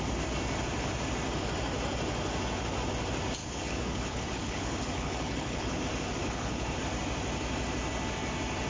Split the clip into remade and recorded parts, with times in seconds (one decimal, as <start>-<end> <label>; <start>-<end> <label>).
0.0-3.4 recorded; 3.4-5.8 remade; 5.8-6.2 recorded; 6.2-6.8 remade; 6.8-8.7 recorded